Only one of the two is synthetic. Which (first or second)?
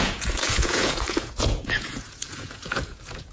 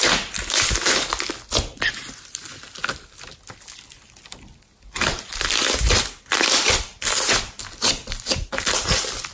first